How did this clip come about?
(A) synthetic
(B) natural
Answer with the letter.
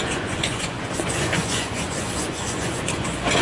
A